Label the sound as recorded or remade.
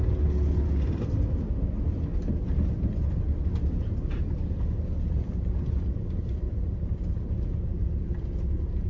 remade